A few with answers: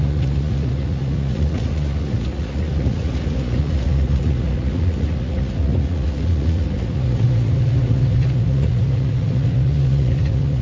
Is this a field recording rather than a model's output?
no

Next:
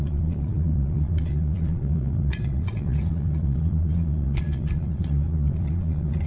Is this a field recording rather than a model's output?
no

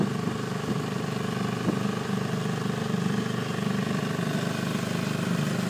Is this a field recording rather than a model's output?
yes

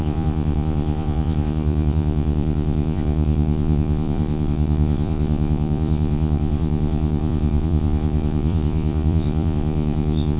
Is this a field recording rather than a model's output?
no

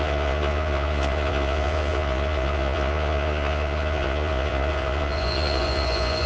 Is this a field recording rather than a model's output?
no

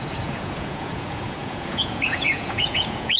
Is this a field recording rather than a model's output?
no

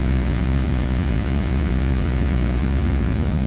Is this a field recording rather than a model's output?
no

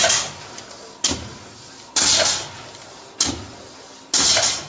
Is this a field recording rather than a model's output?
yes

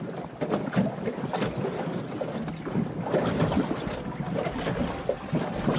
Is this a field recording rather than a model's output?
yes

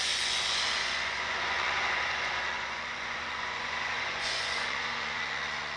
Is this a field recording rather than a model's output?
no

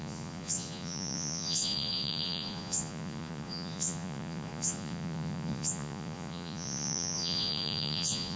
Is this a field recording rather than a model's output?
no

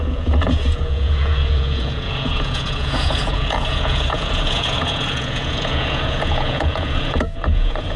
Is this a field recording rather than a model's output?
no